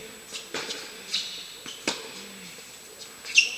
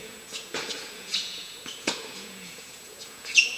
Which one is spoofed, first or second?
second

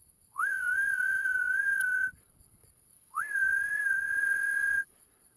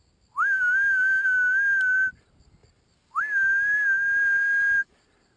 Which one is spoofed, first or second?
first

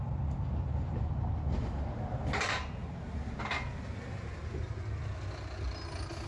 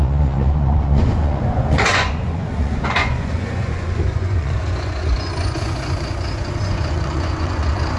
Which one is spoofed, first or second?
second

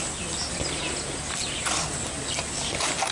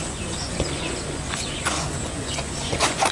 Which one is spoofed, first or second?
second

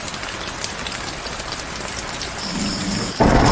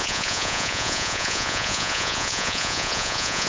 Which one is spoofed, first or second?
second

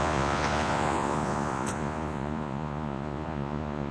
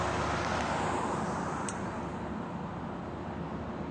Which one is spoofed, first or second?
first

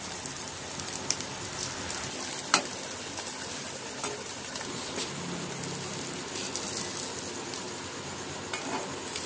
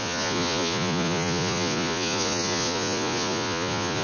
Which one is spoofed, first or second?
second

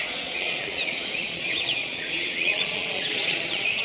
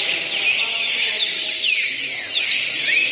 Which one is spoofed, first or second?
first